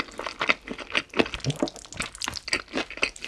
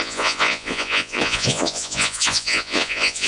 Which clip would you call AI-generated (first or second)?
second